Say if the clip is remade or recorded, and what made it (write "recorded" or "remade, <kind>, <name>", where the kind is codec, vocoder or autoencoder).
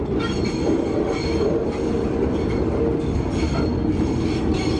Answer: recorded